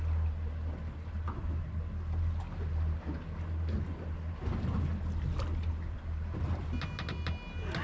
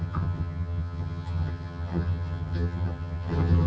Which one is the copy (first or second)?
second